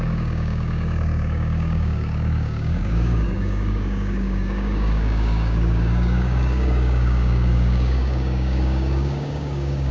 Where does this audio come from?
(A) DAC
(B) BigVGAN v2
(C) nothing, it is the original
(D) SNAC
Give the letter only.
A